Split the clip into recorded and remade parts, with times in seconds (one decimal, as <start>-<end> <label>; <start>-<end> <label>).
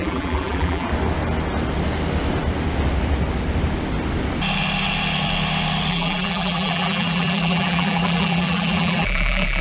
0.0-0.9 remade; 0.9-5.9 recorded; 5.9-9.6 remade